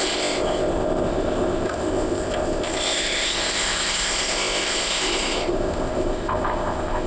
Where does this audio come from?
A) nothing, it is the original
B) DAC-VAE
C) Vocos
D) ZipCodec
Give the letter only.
D